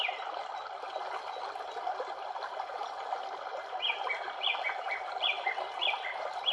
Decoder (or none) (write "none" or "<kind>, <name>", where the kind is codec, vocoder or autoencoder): none